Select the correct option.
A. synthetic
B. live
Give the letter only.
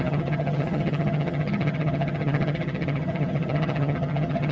A